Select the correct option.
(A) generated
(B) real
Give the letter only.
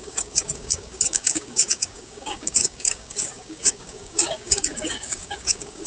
A